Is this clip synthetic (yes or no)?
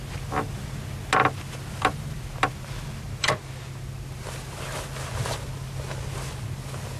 no